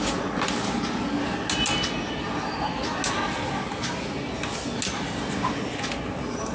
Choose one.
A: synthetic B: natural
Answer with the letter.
B